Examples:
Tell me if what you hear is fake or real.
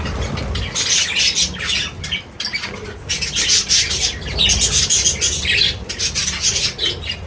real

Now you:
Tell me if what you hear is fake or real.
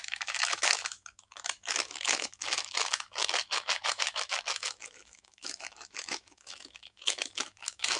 fake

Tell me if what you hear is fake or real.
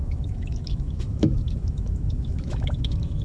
fake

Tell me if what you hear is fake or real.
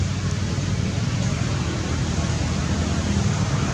real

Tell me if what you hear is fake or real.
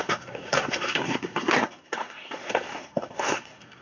fake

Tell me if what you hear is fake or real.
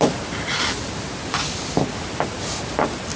real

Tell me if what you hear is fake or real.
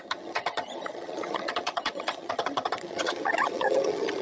fake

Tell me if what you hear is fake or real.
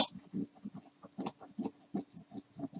real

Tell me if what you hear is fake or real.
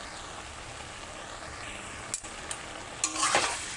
real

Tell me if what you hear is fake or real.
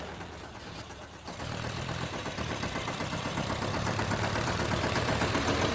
fake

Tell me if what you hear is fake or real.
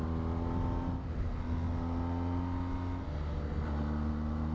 real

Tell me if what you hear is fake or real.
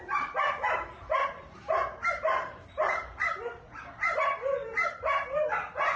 fake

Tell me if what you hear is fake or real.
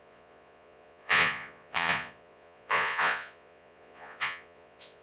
fake